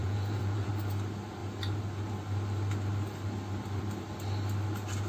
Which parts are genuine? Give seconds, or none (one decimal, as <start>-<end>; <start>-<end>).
0.7-5.1